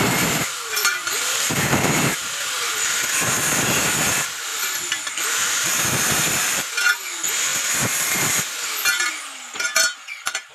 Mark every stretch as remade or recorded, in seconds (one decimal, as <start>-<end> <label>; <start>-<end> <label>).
0.0-0.8 recorded; 0.8-1.5 remade; 1.5-4.5 recorded; 4.5-6.7 remade; 6.7-10.5 recorded